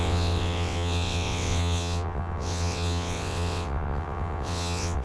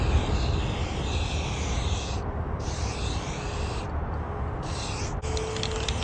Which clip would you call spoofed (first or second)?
first